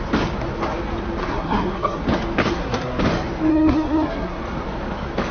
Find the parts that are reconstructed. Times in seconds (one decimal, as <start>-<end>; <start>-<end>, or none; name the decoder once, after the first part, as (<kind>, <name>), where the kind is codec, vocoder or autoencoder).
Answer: 1.2-2.0 (codec, SNAC); 2.4-3.0; 3.5-4.4